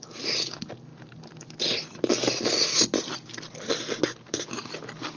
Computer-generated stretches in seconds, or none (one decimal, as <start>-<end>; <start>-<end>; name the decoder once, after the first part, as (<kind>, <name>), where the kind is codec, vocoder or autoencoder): none